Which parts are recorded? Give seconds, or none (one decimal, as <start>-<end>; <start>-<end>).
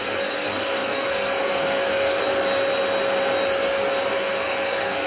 2.2-4.1